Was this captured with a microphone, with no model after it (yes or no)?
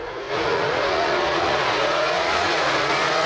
no